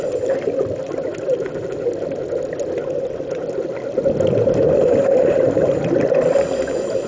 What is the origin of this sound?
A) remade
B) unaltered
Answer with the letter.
B